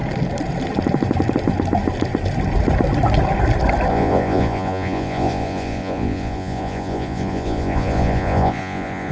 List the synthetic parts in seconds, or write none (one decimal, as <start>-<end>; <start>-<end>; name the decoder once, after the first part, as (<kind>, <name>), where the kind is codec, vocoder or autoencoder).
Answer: 3.9-9.1 (vocoder, Vocos)